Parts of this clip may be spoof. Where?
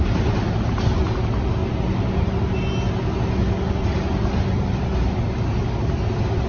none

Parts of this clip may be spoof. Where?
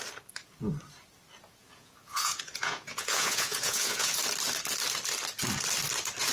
1.6-4.2 (vocoder, Vocos)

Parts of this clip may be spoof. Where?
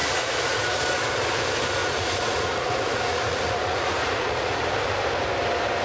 0.0-0.8 (vocoder, Vocos); 1.8-4.6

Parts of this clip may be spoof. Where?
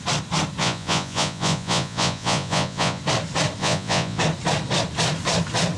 0.6-3.0 (vocoder, Vocos); 3.6-4.2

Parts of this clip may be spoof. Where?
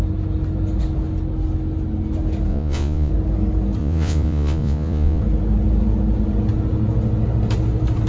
2.5-3.1 (vocoder, Vocos); 3.8-5.2